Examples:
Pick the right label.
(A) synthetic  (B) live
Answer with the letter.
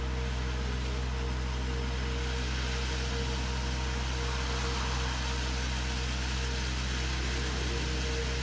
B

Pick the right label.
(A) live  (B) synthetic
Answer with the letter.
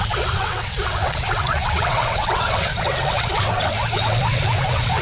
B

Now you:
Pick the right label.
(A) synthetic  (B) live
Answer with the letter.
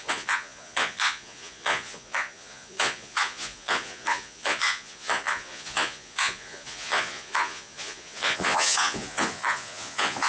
A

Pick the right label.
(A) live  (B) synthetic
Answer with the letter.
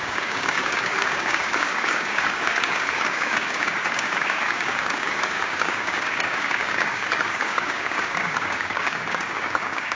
B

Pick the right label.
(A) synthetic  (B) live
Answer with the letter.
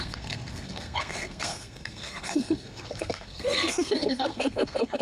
A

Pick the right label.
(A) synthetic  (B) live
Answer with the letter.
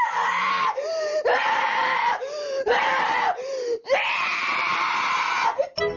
A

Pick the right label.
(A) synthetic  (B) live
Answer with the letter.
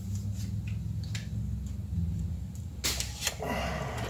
B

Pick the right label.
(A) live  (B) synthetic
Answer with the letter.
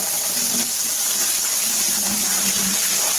A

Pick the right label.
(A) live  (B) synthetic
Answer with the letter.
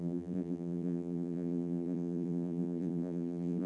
B